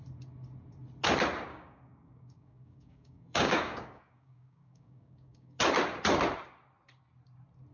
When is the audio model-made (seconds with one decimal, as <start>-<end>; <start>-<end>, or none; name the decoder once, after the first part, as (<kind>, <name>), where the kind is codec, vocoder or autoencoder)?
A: 1.5-5.6 (codec, DAC)